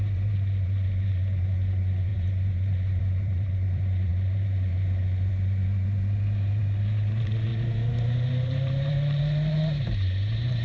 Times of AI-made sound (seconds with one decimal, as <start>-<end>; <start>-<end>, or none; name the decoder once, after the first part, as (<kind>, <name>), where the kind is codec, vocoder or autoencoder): 0.0-10.6 (vocoder, BigVGAN v2)